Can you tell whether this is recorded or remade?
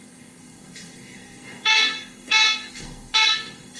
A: remade